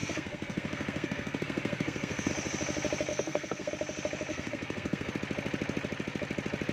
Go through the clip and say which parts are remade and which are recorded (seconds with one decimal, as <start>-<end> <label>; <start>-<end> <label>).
0.0-2.3 remade; 2.3-3.1 recorded; 3.1-3.7 remade; 3.7-4.3 recorded; 4.3-5.1 remade; 5.1-6.7 recorded